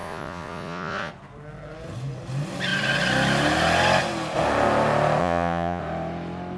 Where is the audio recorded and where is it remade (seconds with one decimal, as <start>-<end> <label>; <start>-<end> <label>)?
0.0-1.1 remade; 1.1-5.2 recorded; 5.2-5.8 remade; 5.8-6.6 recorded

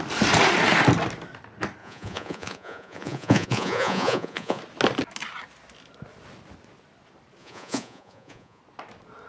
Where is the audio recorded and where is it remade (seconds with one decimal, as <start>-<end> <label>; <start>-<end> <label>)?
0.0-1.8 recorded; 1.8-4.6 remade; 4.6-7.4 recorded; 7.4-8.6 remade; 8.6-9.3 recorded

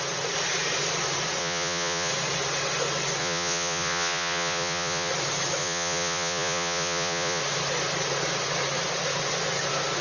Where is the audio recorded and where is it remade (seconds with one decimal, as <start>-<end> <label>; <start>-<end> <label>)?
0.0-1.4 recorded; 1.4-2.1 remade; 2.1-3.2 recorded; 3.2-5.1 remade; 5.1-5.6 recorded; 5.6-7.4 remade; 7.4-10.0 recorded

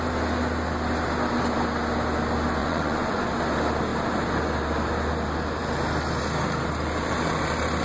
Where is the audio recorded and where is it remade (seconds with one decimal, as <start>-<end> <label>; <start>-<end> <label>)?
0.0-2.6 recorded; 2.6-3.2 remade; 3.2-7.8 recorded